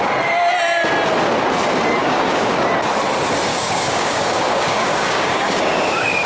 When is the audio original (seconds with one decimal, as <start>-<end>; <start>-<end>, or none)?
0.0-2.0; 2.5-3.5